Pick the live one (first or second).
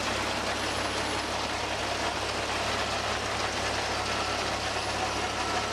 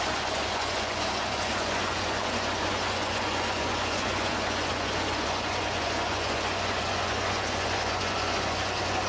first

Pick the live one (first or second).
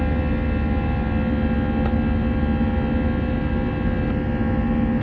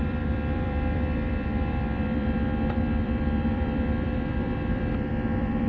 first